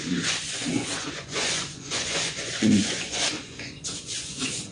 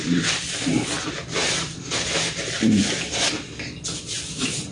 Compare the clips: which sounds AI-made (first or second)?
first